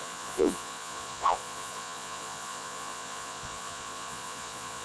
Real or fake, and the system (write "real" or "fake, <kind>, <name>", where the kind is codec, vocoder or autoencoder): fake, vocoder, Vocos